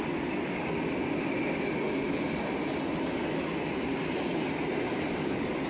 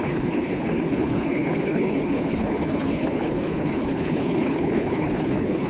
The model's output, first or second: second